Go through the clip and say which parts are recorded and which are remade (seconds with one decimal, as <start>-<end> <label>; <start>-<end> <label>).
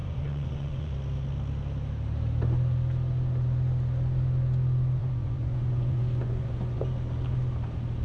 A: 0.0-0.9 remade; 0.9-5.0 recorded; 5.0-6.8 remade; 6.8-8.0 recorded